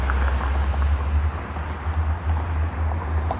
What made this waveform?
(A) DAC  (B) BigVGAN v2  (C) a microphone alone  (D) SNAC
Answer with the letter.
C